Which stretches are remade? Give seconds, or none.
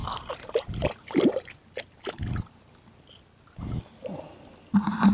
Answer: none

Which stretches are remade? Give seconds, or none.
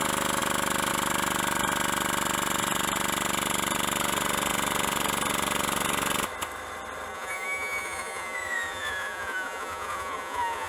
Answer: 7.1-10.7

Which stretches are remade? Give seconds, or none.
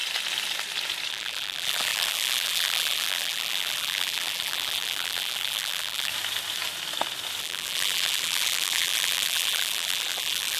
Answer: 1.1-6.1; 7.4-10.6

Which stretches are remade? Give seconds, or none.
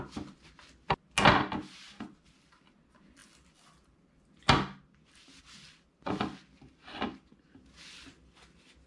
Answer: none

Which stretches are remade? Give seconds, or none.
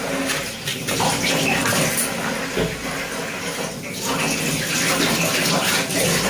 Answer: 0.7-1.3